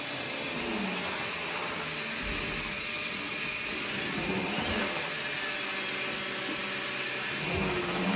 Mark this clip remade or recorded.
recorded